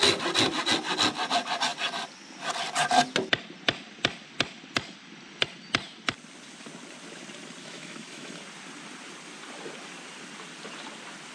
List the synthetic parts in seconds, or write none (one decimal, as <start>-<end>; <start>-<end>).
7.6-8.4